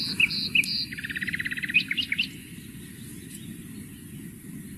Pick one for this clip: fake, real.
real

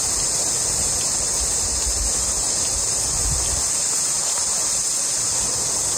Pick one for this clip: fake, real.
real